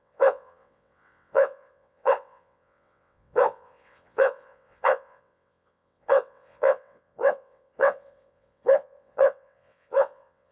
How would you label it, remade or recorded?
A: remade